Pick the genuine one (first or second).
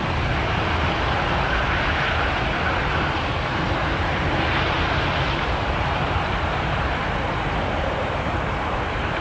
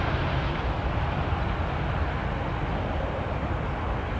second